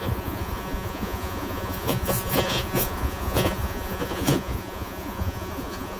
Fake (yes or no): yes